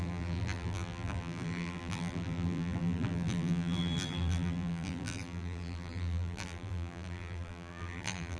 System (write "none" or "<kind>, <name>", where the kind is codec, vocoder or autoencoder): vocoder, BigVGAN v2